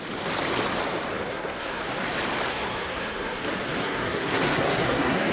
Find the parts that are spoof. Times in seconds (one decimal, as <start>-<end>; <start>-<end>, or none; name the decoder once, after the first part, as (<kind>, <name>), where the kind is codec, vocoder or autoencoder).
1.2-1.8 (codec, SNAC); 2.5-3.4; 3.8-5.3